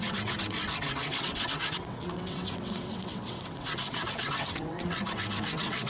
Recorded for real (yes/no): no